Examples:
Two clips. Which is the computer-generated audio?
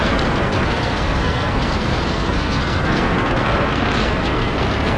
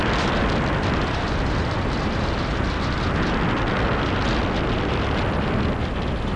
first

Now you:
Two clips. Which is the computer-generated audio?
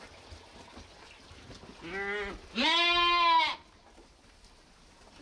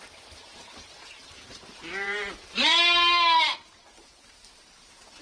second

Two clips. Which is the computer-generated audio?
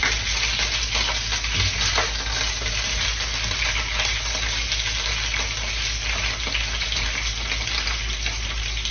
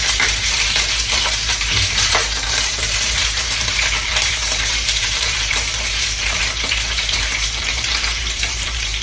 second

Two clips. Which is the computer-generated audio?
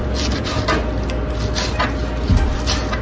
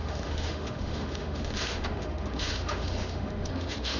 second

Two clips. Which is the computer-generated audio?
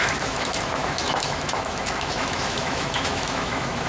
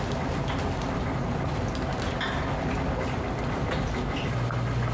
first